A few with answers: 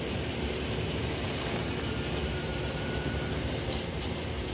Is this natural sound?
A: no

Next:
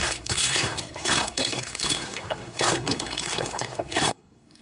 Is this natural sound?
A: no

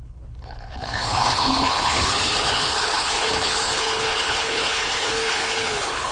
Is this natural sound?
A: no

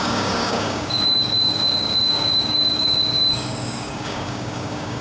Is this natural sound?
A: no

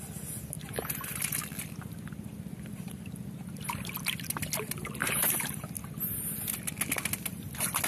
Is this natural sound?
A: yes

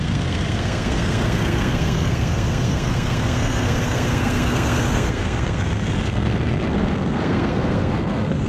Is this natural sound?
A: no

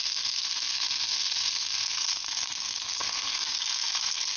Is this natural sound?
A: no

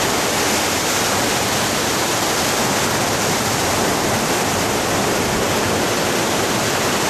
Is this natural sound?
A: yes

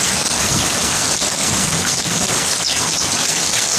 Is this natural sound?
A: no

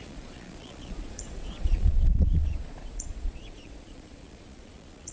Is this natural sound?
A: no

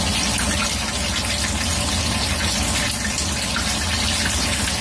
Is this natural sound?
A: yes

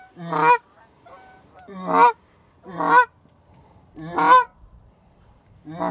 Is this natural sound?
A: yes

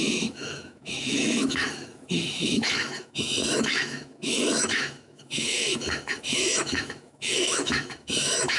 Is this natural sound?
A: no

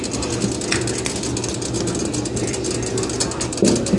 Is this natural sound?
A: yes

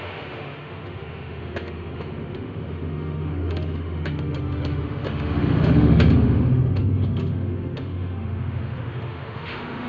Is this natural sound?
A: no